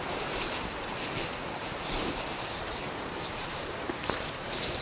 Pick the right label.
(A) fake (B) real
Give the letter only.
A